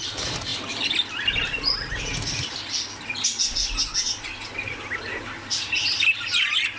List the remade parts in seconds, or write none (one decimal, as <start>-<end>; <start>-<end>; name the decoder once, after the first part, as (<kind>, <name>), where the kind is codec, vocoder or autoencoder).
none